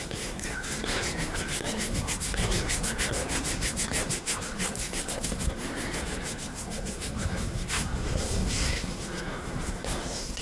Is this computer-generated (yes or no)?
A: yes